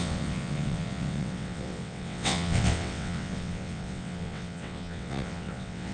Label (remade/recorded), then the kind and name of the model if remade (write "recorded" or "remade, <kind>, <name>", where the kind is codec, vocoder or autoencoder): remade, vocoder, WaveNeXt